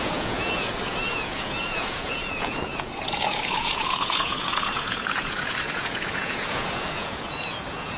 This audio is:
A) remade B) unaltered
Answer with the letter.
A